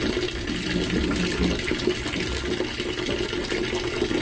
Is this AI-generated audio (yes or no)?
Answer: no